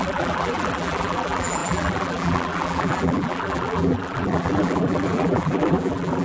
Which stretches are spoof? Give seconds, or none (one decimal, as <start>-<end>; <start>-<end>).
0.0-6.2